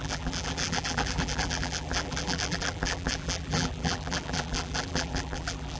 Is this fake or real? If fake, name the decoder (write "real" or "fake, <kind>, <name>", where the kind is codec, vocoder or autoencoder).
fake, vocoder, BigVGAN v2